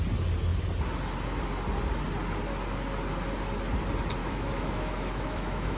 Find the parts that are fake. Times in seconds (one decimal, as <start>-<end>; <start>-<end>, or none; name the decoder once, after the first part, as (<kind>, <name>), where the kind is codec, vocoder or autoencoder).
4.2-5.8 (autoencoder, DAC-VAE)